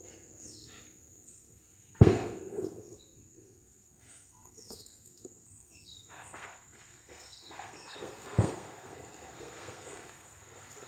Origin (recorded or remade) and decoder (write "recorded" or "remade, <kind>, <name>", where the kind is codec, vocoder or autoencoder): remade, codec, SNAC